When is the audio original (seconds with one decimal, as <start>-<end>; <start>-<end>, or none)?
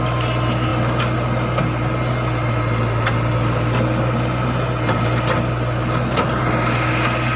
0.0-7.4